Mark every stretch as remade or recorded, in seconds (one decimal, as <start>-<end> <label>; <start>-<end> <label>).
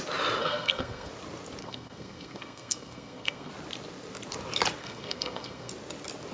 0.0-0.4 recorded; 0.4-1.1 remade; 1.1-1.6 recorded; 1.6-3.5 remade; 3.5-4.8 recorded; 4.8-5.7 remade; 5.7-6.3 recorded